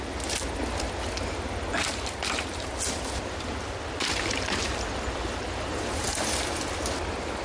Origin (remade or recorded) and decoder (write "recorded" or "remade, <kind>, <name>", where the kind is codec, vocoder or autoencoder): recorded